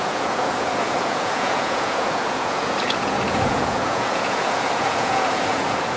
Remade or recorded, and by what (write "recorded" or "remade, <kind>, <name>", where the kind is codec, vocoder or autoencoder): remade, vocoder, Vocos